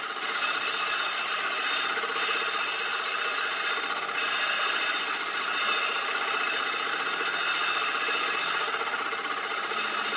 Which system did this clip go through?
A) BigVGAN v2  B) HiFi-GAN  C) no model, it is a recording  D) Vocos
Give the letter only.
C